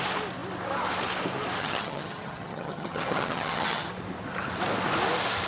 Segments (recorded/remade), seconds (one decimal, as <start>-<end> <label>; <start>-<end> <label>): 0.0-1.6 recorded; 1.6-3.9 remade; 3.9-5.5 recorded